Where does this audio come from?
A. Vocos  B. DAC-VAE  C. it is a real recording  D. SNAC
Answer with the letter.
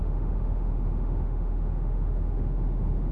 B